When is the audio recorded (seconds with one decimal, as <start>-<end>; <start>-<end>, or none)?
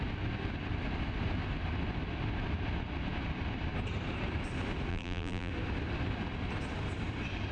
0.0-4.9; 5.5-7.5